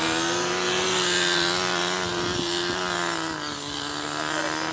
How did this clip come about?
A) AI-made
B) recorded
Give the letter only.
B